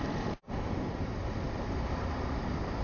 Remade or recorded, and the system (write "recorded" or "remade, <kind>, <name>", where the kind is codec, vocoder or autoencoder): remade, vocoder, BigVGAN v2